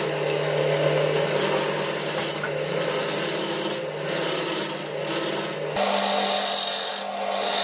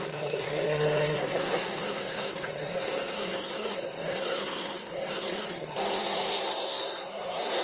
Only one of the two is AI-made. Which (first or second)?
second